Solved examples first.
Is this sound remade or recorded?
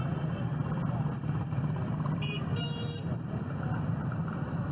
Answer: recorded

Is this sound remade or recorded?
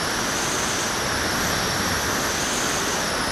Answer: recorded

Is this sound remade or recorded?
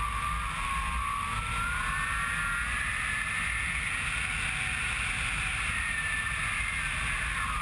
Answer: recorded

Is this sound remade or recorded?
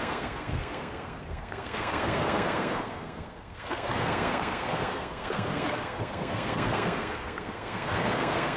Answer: remade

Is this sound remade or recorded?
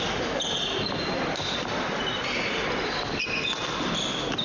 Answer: recorded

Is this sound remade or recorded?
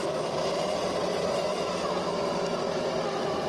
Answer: recorded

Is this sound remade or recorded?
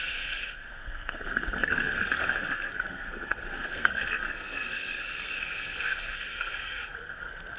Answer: remade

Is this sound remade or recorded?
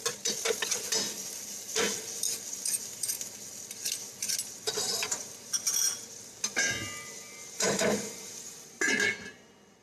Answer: recorded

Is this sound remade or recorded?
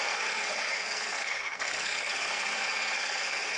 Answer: remade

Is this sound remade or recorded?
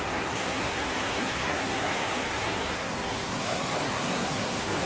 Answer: remade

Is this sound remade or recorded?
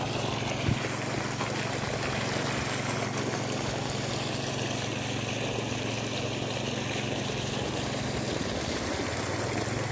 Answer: recorded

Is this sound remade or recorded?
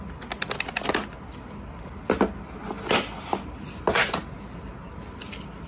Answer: recorded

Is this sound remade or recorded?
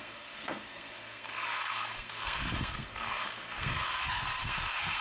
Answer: remade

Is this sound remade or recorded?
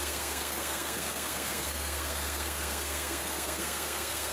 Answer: remade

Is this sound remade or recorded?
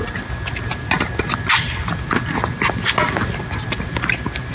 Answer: recorded